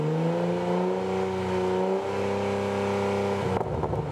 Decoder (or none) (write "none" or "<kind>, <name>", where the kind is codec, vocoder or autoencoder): none